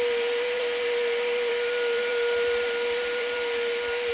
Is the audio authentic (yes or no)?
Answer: no